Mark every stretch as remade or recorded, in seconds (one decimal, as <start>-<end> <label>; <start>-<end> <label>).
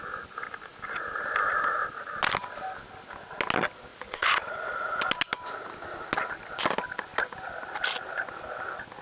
0.0-3.9 recorded; 3.9-5.0 remade; 5.0-9.0 recorded